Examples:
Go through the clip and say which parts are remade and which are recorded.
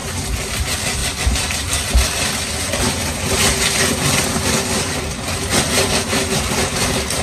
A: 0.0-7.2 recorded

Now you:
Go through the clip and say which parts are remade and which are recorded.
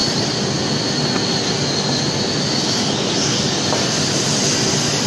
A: 0.0-5.1 recorded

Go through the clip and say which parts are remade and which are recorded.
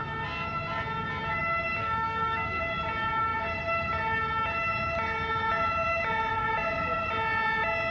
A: 0.0-1.8 recorded; 1.8-2.6 remade; 2.6-7.9 recorded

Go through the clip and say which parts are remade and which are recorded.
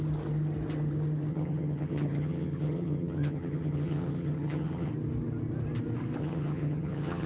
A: 0.0-1.3 recorded; 1.3-4.9 remade; 4.9-6.2 recorded; 6.2-7.3 remade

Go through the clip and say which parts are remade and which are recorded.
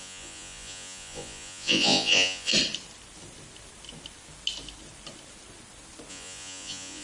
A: 0.0-2.5 remade; 2.5-6.1 recorded; 6.1-7.0 remade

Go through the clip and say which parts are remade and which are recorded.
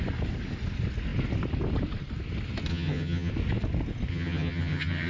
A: 0.0-2.7 recorded; 2.7-3.3 remade; 3.3-4.1 recorded; 4.1-5.1 remade